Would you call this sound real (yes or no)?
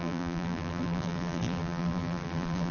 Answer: no